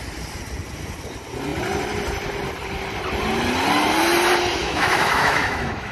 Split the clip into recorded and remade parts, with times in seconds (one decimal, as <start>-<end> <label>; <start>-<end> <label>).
0.0-4.6 recorded; 4.6-5.9 remade